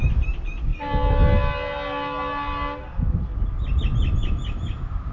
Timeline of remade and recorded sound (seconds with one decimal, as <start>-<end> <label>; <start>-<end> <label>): 0.0-5.1 recorded